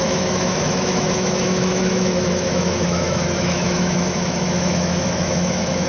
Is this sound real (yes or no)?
no